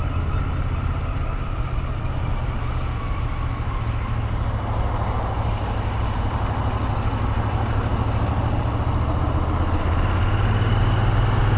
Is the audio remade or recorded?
recorded